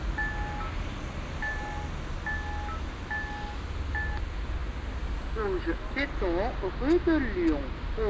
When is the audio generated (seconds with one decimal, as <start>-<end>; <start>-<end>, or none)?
none